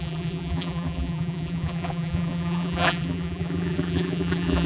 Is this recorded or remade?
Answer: remade